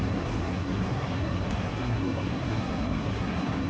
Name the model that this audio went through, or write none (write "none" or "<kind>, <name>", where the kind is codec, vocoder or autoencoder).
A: codec, SNAC